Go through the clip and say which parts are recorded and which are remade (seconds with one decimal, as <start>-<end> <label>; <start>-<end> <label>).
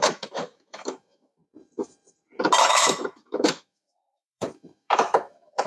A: 0.0-1.4 remade; 1.4-2.6 recorded; 2.6-5.7 remade